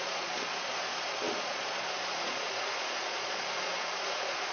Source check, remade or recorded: remade